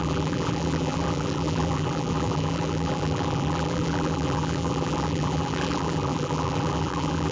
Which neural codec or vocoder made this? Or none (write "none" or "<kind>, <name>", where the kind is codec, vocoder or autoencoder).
vocoder, BigVGAN v2